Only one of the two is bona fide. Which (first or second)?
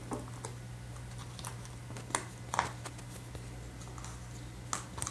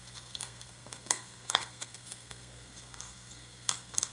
first